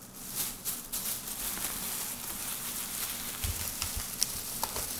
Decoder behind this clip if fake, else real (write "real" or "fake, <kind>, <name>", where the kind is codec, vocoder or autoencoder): real